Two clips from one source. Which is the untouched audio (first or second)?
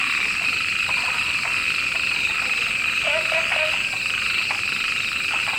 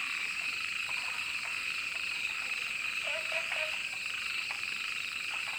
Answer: first